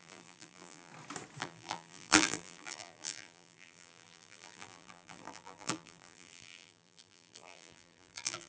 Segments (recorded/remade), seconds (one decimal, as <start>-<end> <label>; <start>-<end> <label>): 0.0-0.9 remade; 0.9-1.4 recorded; 1.4-8.5 remade